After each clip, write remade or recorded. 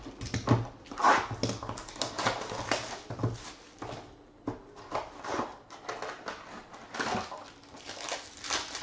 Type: recorded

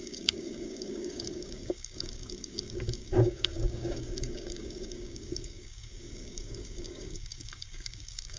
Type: remade